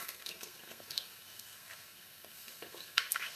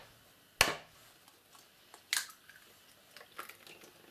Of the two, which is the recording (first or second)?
second